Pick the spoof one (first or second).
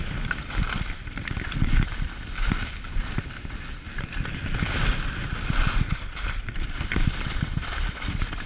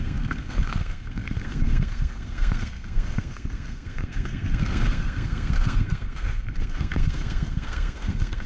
second